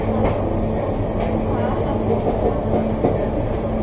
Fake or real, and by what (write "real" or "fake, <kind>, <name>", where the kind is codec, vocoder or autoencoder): real